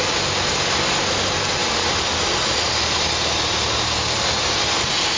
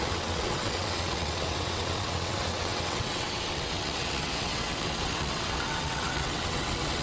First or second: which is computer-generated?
second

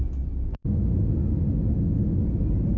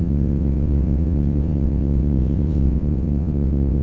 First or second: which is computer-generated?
second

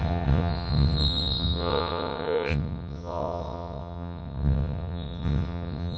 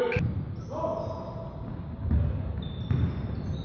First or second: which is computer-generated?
first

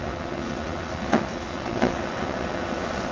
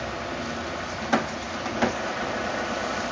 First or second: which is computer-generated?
first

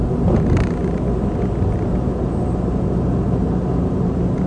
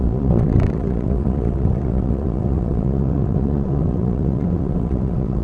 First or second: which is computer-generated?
second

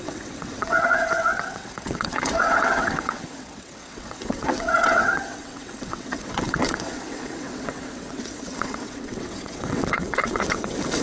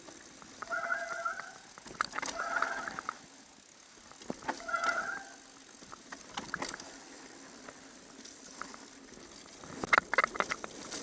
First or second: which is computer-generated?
first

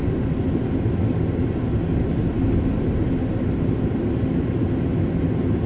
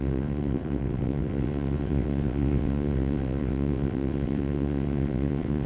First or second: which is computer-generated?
second